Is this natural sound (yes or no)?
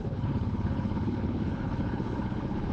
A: no